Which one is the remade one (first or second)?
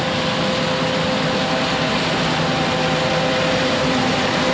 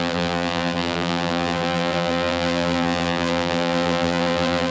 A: second